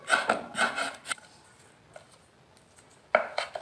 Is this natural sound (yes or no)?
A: yes